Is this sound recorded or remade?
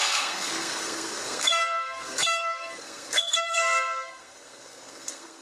remade